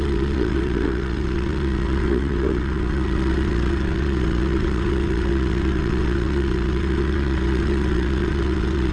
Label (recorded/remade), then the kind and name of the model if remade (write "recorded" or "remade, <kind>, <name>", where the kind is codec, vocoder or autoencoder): remade, vocoder, WaveNeXt